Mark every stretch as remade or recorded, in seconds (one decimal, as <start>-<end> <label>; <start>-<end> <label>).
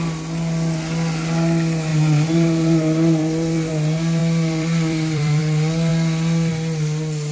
0.0-1.9 recorded; 1.9-3.7 remade; 3.7-4.2 recorded; 4.2-5.4 remade; 5.4-7.3 recorded